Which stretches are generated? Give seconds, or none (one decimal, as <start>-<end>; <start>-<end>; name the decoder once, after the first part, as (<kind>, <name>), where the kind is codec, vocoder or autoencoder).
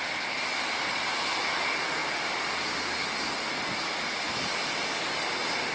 none